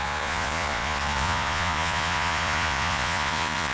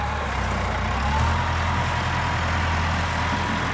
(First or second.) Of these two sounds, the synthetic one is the first